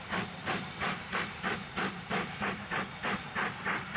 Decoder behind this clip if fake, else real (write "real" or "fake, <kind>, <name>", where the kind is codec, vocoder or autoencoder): fake, vocoder, BigVGAN v2